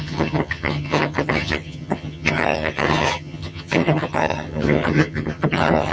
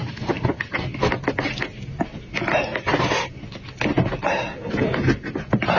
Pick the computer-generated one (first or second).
first